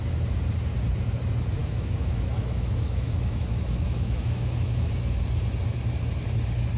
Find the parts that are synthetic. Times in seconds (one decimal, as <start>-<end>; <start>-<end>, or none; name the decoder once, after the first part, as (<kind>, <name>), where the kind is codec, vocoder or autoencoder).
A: 1.6-4.9 (autoencoder, DAC-VAE)